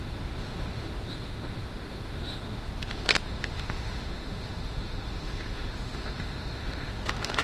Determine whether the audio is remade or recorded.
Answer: remade